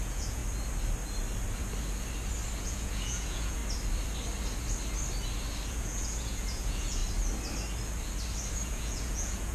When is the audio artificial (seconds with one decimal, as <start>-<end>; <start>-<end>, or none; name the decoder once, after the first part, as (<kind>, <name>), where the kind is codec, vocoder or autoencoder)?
0.0-0.4 (vocoder, Vocos); 2.6-3.6; 5.7-7.0; 8.5-9.5